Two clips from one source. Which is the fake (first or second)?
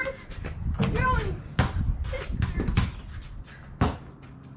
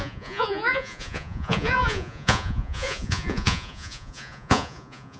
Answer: second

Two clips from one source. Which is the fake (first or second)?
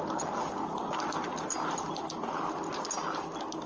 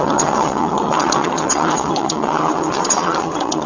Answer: second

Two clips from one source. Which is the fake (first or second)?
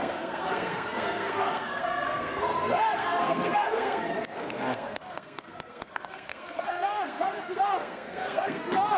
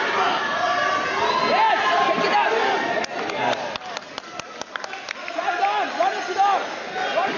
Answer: first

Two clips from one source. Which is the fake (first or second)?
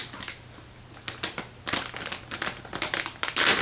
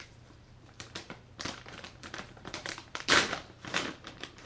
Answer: second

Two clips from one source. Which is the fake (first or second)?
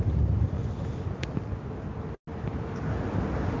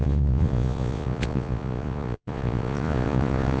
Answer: second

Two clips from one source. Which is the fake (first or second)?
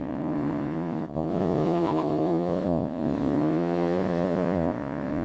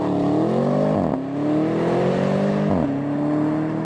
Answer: first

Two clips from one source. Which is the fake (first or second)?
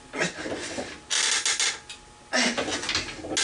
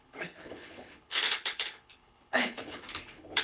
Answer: second